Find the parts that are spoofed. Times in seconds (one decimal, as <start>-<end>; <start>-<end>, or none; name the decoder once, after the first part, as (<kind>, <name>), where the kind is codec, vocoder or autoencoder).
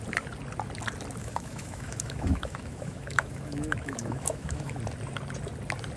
1.2-4.8 (autoencoder, DAC-VAE)